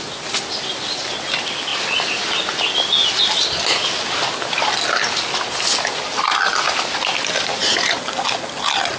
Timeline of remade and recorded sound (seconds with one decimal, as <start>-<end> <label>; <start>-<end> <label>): 0.0-9.0 recorded